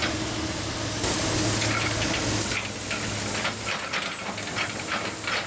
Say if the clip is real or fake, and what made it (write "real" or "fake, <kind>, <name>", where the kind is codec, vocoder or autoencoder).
real